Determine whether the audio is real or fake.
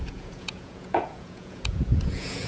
fake